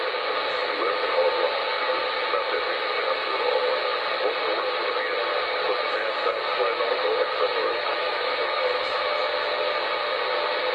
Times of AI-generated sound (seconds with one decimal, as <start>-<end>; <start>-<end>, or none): 7.5-9.2